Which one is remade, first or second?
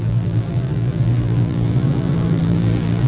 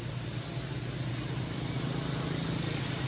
first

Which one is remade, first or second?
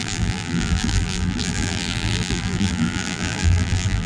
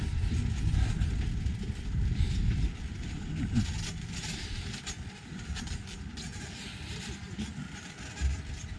first